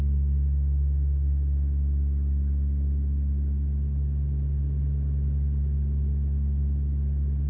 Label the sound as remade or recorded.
recorded